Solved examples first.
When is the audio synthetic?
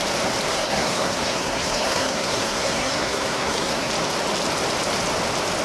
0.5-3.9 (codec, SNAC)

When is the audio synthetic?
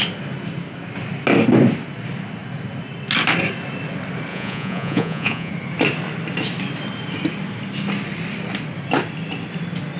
4.3-5.5 (vocoder, Vocos)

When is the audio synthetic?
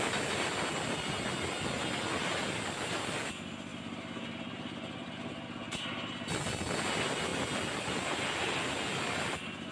3.7-6.3 (vocoder, BigVGAN v2)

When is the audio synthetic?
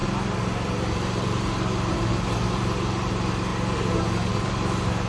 0.0-3.5 (vocoder, BigVGAN v2); 4.3-5.1